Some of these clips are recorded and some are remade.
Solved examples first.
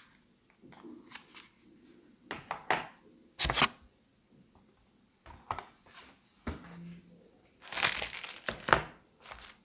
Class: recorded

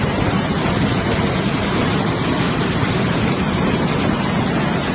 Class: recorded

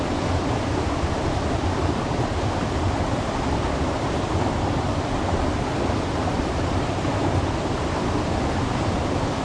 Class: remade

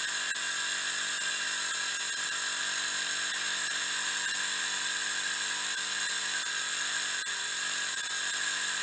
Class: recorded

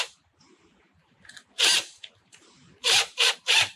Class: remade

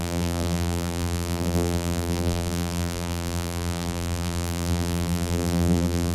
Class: remade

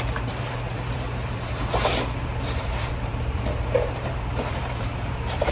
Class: remade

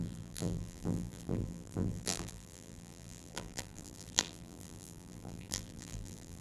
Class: remade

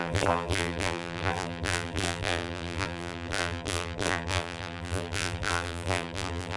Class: remade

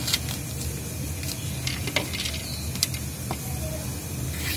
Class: recorded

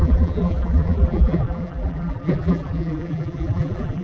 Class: remade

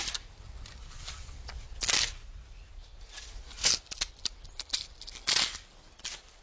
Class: recorded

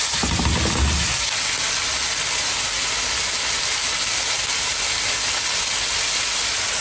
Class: recorded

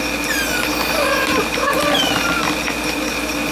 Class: recorded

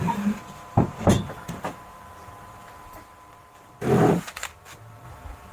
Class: remade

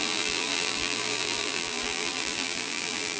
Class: remade